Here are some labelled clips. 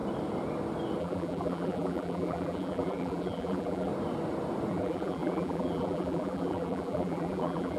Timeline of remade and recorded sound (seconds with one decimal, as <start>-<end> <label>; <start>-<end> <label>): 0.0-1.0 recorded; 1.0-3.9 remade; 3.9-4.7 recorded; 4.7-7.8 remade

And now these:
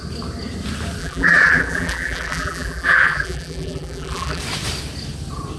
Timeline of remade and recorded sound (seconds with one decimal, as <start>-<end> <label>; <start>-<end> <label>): 0.0-1.0 recorded; 1.0-4.4 remade; 4.4-5.6 recorded

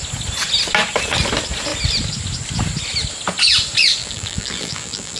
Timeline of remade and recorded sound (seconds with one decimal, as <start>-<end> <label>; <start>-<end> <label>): 0.0-4.0 recorded; 4.0-5.2 remade

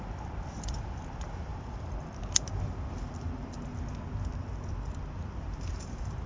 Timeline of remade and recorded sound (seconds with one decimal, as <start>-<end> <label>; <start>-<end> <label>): 0.0-3.7 remade; 3.7-4.7 recorded; 4.7-6.3 remade

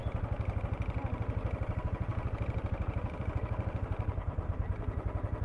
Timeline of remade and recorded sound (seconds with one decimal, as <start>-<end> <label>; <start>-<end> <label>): 0.0-0.6 remade; 0.6-2.1 recorded; 2.1-4.8 remade; 4.8-5.4 recorded